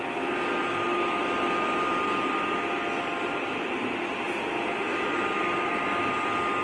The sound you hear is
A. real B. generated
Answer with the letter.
A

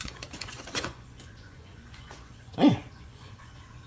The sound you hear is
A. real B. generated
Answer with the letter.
B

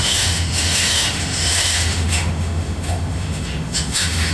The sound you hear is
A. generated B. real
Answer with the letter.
A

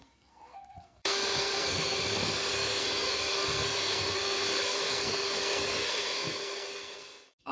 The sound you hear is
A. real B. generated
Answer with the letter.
B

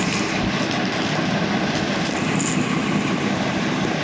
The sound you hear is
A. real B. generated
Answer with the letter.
A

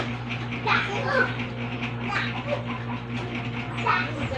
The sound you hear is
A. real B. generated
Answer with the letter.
A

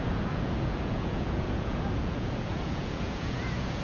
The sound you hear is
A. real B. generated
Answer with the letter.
B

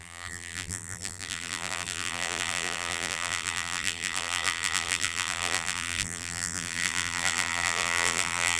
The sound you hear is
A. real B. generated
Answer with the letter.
B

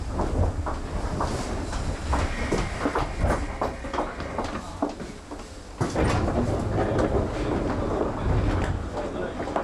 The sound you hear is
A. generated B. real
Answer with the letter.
B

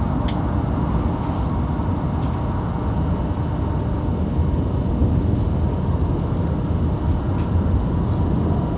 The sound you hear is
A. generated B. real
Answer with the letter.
B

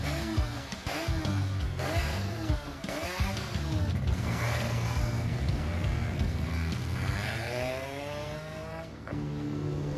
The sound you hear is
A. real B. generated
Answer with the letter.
B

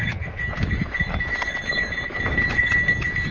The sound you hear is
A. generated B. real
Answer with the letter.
A